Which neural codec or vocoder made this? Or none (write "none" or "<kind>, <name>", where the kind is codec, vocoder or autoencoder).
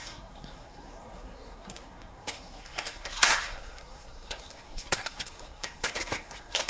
codec, SNAC